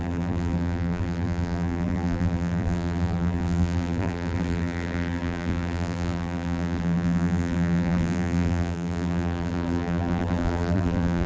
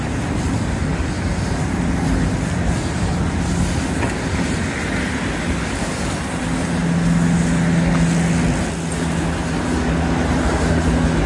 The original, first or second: second